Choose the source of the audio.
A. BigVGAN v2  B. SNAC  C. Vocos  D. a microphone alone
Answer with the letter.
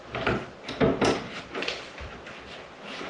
D